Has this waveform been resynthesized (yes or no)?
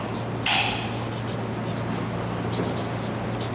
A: no